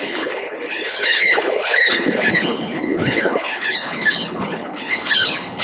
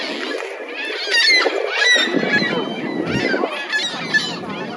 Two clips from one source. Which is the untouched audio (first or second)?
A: second